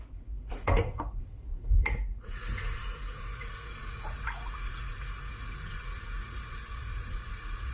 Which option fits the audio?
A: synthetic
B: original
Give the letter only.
A